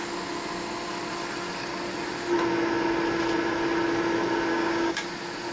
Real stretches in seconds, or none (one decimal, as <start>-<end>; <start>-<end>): 0.0-4.5; 5.1-5.5